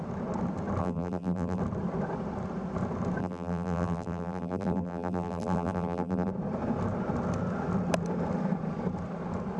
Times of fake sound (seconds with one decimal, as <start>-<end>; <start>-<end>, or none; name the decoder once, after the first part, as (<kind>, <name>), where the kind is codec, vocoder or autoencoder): 0.8-1.6 (vocoder, BigVGAN v2); 3.2-6.3